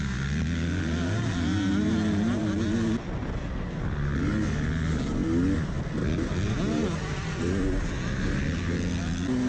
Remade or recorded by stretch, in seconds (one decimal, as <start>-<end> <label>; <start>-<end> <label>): 0.0-9.5 recorded